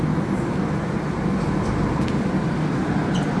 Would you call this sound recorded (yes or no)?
yes